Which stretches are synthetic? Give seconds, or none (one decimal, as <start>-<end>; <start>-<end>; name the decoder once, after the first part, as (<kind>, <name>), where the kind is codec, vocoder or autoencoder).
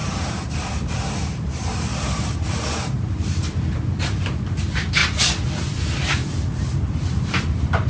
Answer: 0.0-5.0 (vocoder, BigVGAN v2); 5.6-7.9